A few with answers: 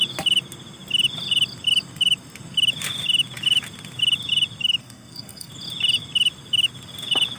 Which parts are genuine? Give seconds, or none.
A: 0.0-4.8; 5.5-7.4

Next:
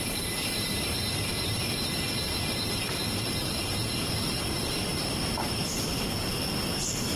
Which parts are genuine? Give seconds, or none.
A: 4.9-5.6